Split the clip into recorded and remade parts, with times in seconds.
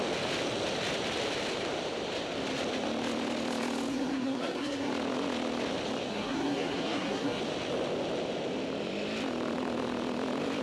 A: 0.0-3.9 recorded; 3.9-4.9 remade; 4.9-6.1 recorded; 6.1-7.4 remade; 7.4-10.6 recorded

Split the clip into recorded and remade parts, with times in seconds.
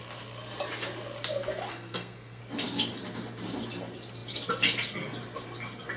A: 0.0-1.7 recorded; 1.7-2.4 remade; 2.4-6.0 recorded